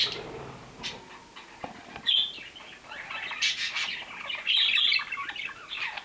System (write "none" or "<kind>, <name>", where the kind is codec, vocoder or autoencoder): none